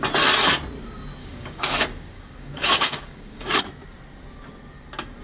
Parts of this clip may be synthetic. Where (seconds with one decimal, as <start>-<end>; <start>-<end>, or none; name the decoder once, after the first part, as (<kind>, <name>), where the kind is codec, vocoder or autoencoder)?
1.2-3.6 (codec, DAC)